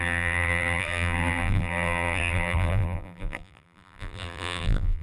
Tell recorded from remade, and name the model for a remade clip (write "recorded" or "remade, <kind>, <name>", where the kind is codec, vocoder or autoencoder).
remade, vocoder, BigVGAN v2